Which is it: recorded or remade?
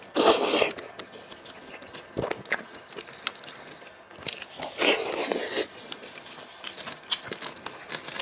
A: recorded